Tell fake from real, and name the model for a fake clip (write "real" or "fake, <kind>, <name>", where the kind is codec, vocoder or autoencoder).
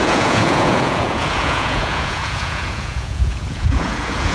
fake, vocoder, Vocos